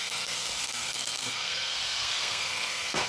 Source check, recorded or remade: remade